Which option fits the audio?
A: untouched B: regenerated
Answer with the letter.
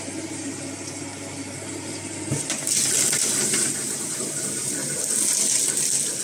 A